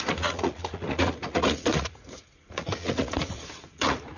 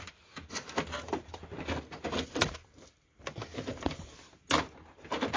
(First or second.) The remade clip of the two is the first